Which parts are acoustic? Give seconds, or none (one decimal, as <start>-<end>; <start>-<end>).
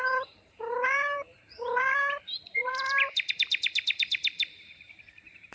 none